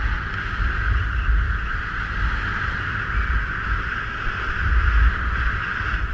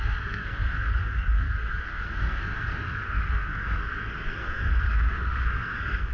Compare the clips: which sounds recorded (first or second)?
first